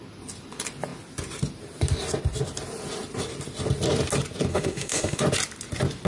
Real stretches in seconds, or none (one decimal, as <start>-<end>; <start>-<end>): 0.0-4.5; 5.2-6.1